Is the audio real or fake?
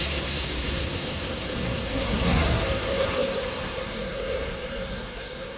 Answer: fake